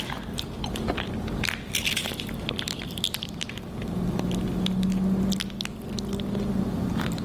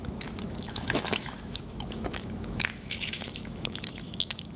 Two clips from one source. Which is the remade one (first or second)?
second